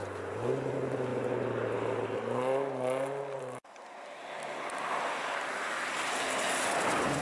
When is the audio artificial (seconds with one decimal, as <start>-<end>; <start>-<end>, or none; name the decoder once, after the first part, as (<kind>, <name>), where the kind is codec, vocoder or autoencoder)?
none